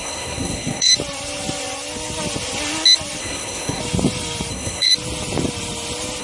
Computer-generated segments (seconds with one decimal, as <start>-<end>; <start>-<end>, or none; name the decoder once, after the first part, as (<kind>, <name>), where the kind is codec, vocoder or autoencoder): 0.0-0.9 (codec, SNAC); 3.2-3.8; 4.5-4.9